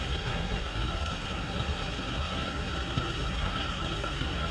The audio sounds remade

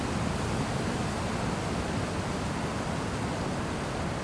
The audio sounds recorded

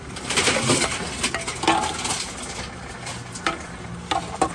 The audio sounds recorded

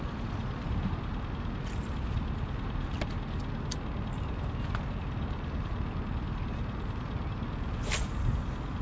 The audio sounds recorded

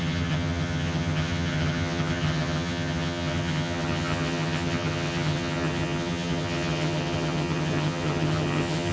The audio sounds remade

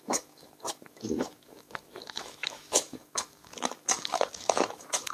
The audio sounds remade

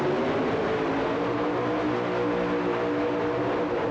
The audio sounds recorded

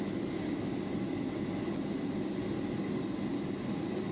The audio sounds recorded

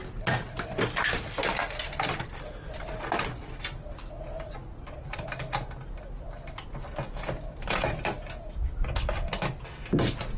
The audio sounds recorded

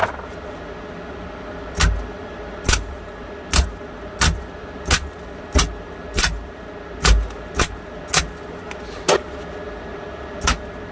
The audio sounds recorded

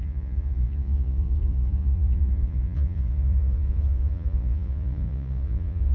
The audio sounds remade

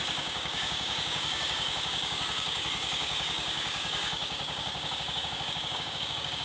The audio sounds remade